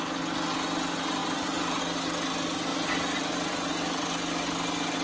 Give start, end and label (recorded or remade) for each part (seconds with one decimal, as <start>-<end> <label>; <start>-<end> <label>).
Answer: 0.0-1.2 recorded; 1.2-1.8 remade; 1.8-2.7 recorded; 2.7-3.7 remade; 3.7-5.0 recorded